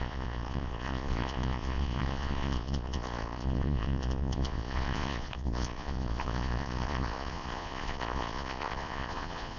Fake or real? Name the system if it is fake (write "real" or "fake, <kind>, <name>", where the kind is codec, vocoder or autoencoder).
fake, vocoder, Vocos